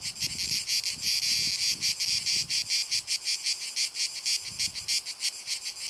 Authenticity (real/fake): real